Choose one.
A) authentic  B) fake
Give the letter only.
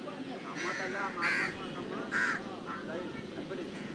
B